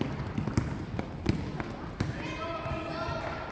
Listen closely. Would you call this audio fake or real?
real